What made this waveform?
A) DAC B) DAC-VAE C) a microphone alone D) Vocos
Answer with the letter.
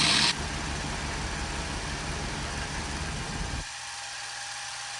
C